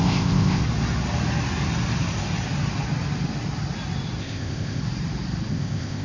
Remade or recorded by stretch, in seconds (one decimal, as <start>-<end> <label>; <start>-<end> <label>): 0.0-0.6 remade; 0.6-4.2 recorded; 4.2-4.8 remade; 4.8-5.5 recorded; 5.5-6.0 remade